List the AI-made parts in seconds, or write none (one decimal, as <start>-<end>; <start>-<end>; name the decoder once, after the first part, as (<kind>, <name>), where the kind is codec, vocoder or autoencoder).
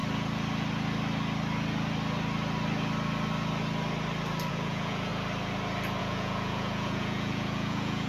4.5-5.1 (vocoder, Vocos); 6.0-8.1